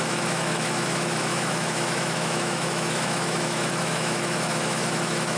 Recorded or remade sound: remade